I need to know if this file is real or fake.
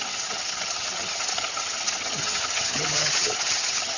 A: fake